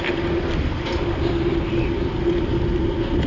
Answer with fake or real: real